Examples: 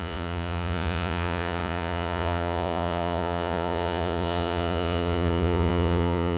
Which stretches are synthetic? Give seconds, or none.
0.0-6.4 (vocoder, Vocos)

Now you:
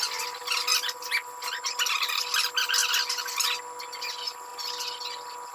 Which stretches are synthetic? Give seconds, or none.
none

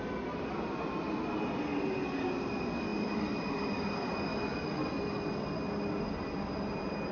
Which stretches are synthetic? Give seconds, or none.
none

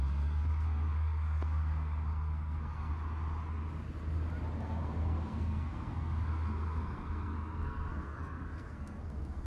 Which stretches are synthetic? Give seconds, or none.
0.0-2.9 (codec, SNAC); 4.6-9.5

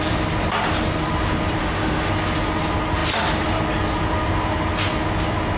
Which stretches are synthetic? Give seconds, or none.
1.6-2.1 (autoencoder, DAC-VAE)

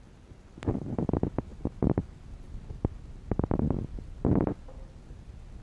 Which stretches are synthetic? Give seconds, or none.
none